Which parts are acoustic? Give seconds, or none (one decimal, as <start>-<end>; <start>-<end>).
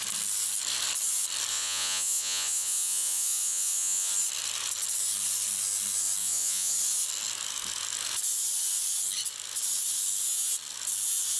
0.0-1.5; 4.1-6.2; 6.7-11.4